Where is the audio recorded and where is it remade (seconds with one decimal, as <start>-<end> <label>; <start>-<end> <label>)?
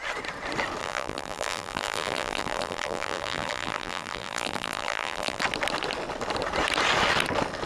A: 0.0-0.8 recorded; 0.8-5.4 remade; 5.4-7.7 recorded